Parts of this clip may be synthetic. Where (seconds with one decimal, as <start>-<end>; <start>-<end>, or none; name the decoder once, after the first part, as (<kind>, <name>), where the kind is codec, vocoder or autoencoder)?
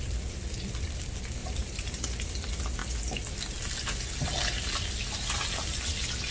1.4-2.3 (vocoder, BigVGAN v2)